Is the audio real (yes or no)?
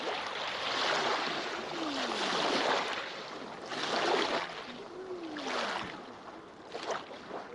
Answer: yes